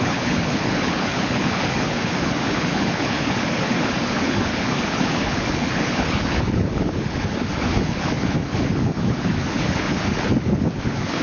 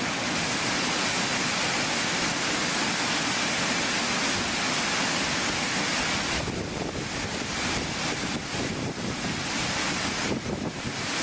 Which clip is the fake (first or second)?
first